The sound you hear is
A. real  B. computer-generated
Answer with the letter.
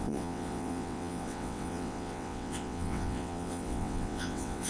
B